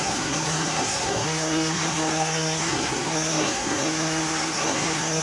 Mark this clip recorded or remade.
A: remade